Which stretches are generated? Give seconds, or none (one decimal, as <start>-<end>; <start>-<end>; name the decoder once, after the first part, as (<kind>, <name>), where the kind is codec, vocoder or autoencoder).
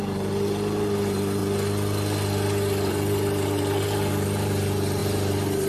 0.0-1.4 (vocoder, BigVGAN v2); 2.9-5.7